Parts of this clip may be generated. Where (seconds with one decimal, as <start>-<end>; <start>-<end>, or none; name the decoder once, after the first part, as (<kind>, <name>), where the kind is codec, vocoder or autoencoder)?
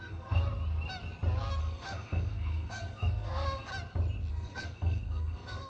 0.0-0.4 (codec, SNAC); 1.6-3.7; 4.3-5.7